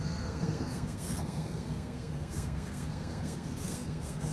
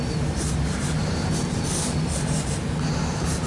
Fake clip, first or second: first